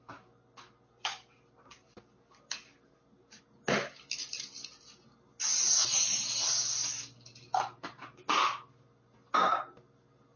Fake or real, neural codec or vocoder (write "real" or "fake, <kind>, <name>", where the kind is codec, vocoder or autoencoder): real